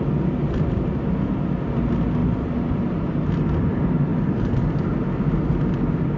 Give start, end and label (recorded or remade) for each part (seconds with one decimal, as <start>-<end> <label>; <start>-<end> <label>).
0.0-2.2 recorded; 2.2-3.1 remade; 3.1-4.1 recorded; 4.1-5.4 remade; 5.4-6.2 recorded